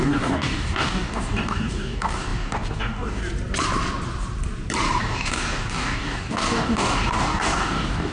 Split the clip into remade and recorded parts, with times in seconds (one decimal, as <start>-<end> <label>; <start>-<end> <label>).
0.0-3.2 remade; 3.2-5.0 recorded; 5.0-8.1 remade